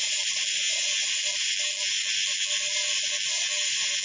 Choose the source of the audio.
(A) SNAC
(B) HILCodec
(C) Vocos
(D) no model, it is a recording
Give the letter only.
D